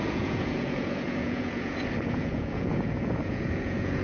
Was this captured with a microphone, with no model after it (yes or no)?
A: no